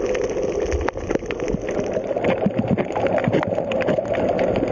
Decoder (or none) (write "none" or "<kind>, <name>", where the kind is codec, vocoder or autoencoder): none